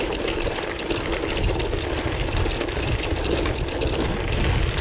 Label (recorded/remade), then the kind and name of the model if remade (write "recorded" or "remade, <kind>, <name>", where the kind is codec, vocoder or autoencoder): recorded